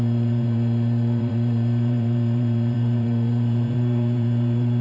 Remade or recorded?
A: remade